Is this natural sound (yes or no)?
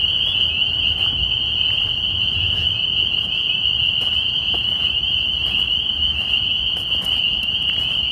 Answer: yes